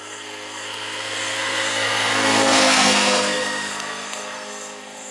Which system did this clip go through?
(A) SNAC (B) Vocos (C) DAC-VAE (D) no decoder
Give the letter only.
A